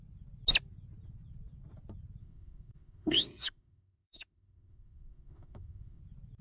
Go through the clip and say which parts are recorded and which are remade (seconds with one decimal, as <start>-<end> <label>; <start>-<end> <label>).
0.0-2.2 recorded; 2.2-6.0 remade; 6.0-6.4 recorded